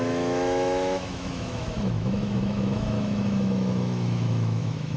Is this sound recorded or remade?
remade